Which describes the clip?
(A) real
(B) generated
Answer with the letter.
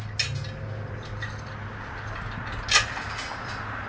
A